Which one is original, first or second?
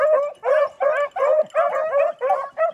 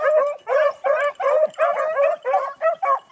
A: first